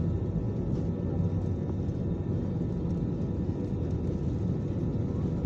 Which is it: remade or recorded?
recorded